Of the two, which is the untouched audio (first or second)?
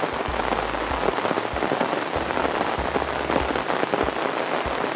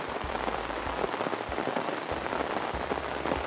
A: first